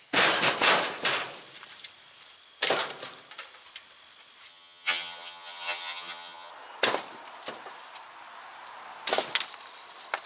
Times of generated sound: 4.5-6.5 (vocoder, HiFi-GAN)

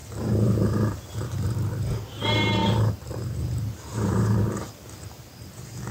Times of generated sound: 0.0-1.7 (vocoder, BigVGAN v2); 2.6-3.4; 3.9-4.4

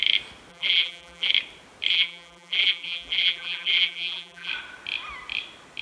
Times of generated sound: 0.5-1.3 (vocoder, BigVGAN v2); 1.9-4.5

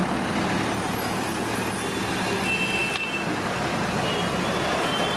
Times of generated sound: none

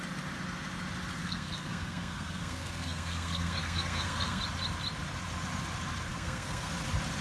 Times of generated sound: 1.2-4.4 (codec, SNAC); 6.1-6.7

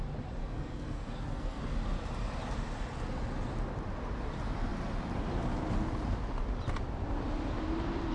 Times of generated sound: 0.4-1.6 (codec, SNAC)

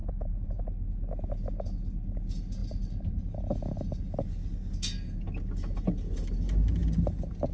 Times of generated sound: 0.0-0.6 (vocoder, BigVGAN v2); 2.6-3.4

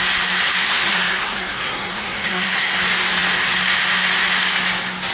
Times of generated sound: 0.5-2.8 (codec, SNAC)